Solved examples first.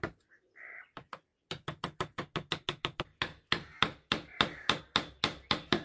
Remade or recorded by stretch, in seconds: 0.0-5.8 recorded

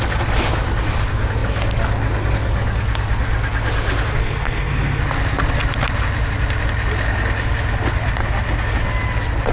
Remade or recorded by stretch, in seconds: 0.0-4.2 recorded; 4.2-5.0 remade; 5.0-9.5 recorded

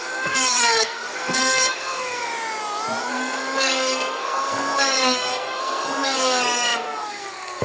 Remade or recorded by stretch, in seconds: 0.0-2.3 remade; 2.3-3.0 recorded; 3.0-7.6 remade

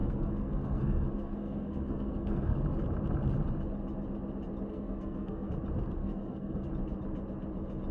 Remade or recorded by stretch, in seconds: 0.0-2.6 remade; 2.6-4.7 recorded; 4.7-5.5 remade; 5.5-6.0 recorded; 6.0-6.7 remade; 6.7-7.9 recorded